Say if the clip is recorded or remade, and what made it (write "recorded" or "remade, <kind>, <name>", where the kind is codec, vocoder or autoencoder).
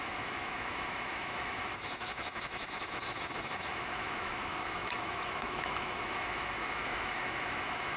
remade, autoencoder, DAC-VAE